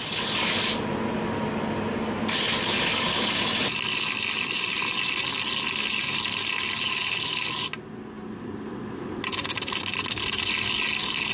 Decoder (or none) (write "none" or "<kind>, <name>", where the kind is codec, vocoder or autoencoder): none